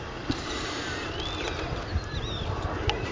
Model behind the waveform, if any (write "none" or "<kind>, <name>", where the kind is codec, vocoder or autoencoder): none